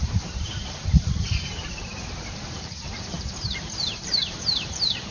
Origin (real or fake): fake